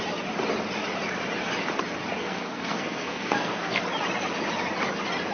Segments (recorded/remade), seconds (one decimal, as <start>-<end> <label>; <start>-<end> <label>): 0.0-2.2 recorded; 2.2-3.8 remade; 3.8-5.3 recorded